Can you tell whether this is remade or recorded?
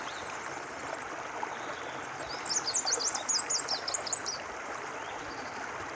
recorded